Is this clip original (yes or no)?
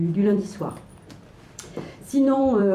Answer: no